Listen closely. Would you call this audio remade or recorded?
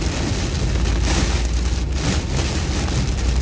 recorded